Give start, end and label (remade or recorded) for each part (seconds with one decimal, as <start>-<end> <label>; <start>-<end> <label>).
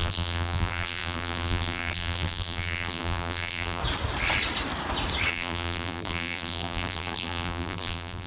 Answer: 0.0-3.8 remade; 3.8-5.3 recorded; 5.3-8.3 remade